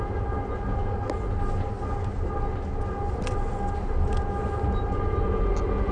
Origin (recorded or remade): recorded